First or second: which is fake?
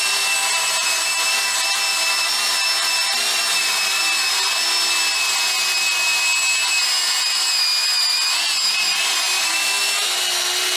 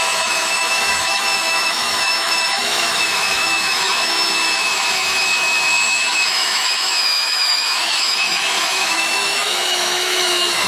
second